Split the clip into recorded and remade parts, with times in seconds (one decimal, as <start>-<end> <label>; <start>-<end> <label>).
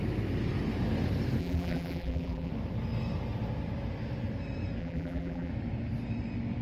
0.0-1.4 recorded; 1.4-2.5 remade; 2.5-4.8 recorded; 4.8-5.5 remade; 5.5-6.6 recorded